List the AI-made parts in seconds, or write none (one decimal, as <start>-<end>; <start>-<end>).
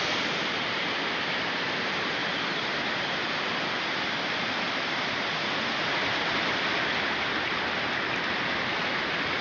none